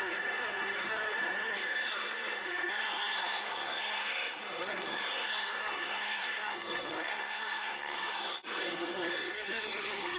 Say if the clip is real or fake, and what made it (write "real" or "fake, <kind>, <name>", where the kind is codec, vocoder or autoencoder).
fake, codec, SNAC